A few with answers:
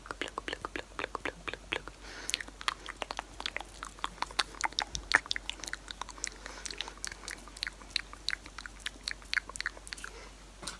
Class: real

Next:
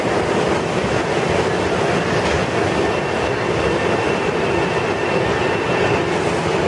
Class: real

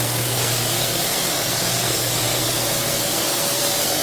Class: fake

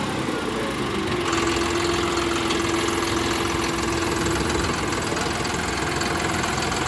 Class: real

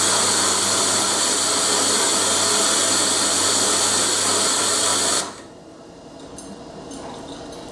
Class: real